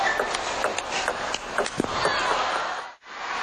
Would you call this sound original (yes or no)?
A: yes